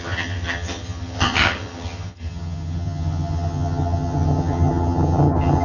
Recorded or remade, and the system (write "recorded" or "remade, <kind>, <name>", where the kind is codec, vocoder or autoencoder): remade, vocoder, HiFi-GAN